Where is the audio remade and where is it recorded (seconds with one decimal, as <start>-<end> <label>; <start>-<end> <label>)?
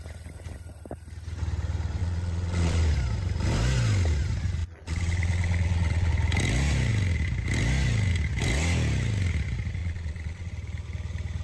0.0-2.0 recorded; 2.0-2.8 remade; 2.8-4.6 recorded; 4.6-6.1 remade; 6.1-9.8 recorded; 9.8-10.5 remade; 10.5-11.4 recorded